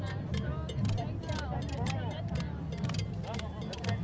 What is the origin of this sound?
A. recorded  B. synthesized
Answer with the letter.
A